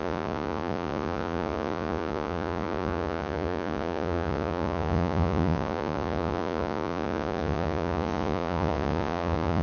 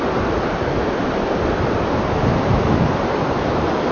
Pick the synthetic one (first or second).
first